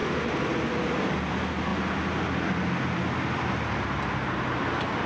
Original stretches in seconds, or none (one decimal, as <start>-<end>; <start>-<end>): 0.0-5.1